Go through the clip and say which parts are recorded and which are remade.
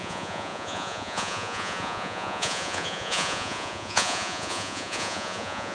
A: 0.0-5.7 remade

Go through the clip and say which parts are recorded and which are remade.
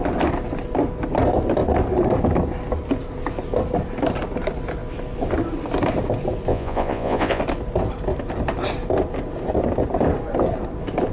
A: 0.0-6.5 recorded; 6.5-7.4 remade; 7.4-11.1 recorded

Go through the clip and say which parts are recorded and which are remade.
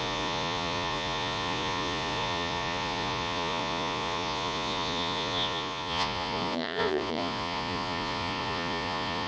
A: 0.0-9.3 remade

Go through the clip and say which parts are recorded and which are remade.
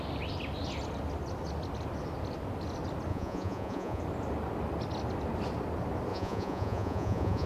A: 0.0-3.1 recorded; 3.1-4.0 remade; 4.0-6.1 recorded; 6.1-7.5 remade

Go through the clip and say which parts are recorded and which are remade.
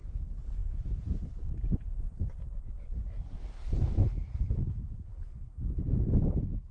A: 0.0-6.7 recorded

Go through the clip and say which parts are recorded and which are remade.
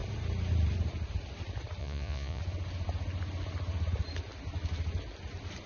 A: 0.0-1.8 recorded; 1.8-2.4 remade; 2.4-5.7 recorded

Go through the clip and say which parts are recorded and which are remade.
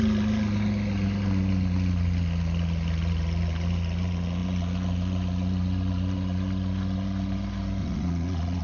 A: 0.0-7.8 recorded; 7.8-8.6 remade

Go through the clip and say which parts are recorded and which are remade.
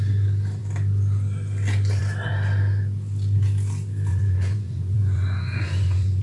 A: 0.0-4.1 recorded; 4.1-6.2 remade